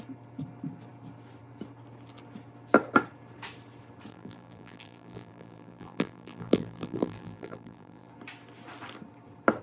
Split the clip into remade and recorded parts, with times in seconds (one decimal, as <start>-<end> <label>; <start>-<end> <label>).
0.0-4.1 recorded; 4.1-8.1 remade; 8.1-9.6 recorded